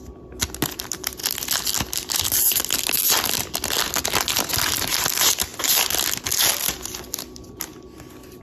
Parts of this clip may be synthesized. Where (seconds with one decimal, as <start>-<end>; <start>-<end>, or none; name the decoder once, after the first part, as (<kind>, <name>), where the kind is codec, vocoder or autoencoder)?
none